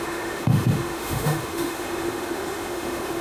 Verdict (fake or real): fake